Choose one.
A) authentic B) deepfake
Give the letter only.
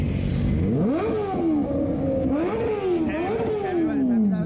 A